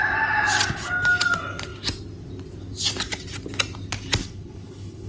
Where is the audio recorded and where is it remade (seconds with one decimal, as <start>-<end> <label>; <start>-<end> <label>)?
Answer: 0.0-4.2 recorded; 4.2-5.1 remade